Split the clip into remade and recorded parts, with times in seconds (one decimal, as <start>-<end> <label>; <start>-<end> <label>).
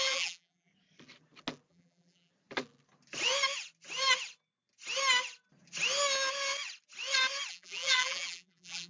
0.0-0.7 remade; 0.7-1.7 recorded; 1.7-2.3 remade; 2.3-7.5 recorded; 7.5-8.9 remade